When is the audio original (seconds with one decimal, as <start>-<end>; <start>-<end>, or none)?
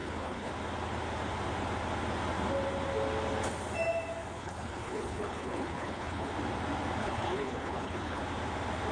0.5-4.4; 6.3-7.0; 8.2-8.9